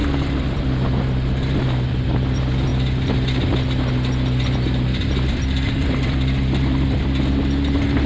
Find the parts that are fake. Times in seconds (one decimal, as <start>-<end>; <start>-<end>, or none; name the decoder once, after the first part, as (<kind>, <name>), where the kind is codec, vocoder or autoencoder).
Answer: 0.0-0.6 (vocoder, BigVGAN v2); 2.7-7.0